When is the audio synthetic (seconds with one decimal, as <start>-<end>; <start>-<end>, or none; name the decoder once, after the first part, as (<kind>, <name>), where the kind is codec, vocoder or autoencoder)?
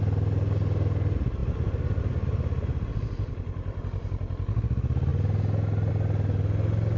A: none